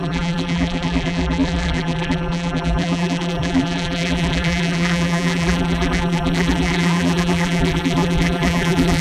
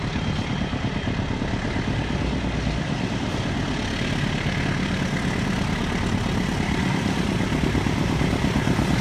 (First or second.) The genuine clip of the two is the second